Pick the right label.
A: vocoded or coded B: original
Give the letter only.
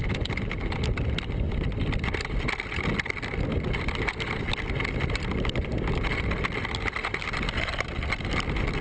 B